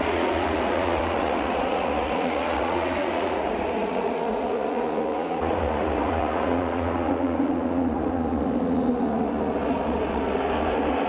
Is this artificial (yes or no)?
yes